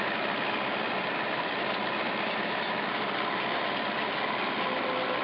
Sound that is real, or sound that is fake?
real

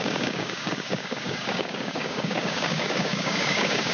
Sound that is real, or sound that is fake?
fake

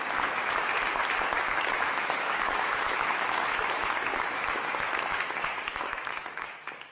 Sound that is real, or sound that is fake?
fake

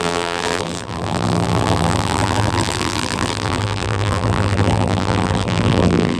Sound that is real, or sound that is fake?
fake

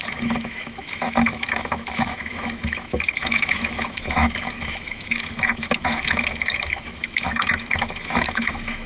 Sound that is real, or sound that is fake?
fake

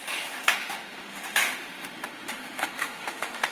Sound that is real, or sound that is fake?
fake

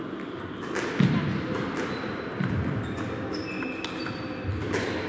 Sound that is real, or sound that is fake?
real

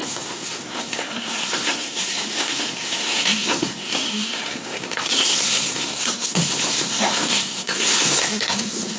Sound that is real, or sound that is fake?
fake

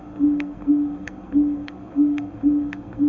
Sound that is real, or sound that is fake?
fake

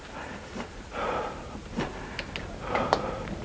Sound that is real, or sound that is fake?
real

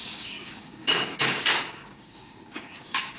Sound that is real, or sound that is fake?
fake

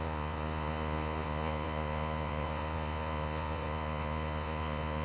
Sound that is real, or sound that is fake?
fake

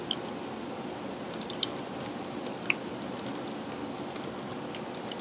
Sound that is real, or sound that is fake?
real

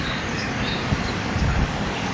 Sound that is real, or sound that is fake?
fake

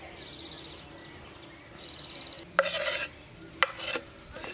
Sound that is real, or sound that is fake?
real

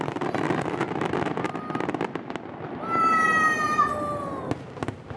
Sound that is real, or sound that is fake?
real